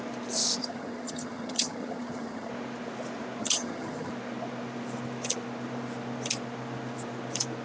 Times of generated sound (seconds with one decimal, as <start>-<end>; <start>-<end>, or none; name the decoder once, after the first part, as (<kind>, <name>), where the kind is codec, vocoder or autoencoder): 0.6-2.5 (vocoder, HiFi-GAN); 3.4-4.1